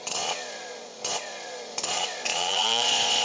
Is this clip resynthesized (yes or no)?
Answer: yes